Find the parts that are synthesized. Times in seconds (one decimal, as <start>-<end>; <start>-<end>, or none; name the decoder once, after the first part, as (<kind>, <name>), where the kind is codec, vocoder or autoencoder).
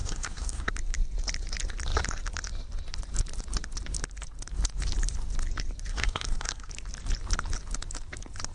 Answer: 0.0-0.7 (codec, SNAC); 5.9-6.7